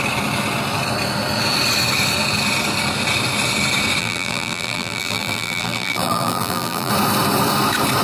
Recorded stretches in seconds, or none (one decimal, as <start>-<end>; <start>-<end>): 0.0-4.0; 6.9-8.0